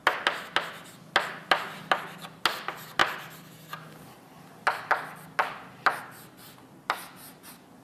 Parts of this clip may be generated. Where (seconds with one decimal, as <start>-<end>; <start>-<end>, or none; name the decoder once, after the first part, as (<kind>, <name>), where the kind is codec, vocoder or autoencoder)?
none